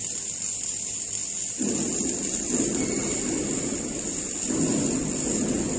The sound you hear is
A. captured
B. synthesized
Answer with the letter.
A